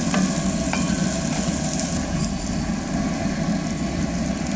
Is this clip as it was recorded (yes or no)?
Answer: yes